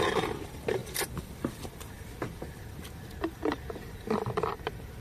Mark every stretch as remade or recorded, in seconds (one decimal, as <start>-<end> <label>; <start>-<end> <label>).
0.0-5.0 remade